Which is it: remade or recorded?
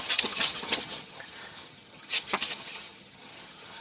remade